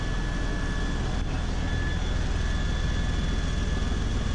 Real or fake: real